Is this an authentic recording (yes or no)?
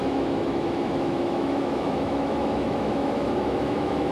no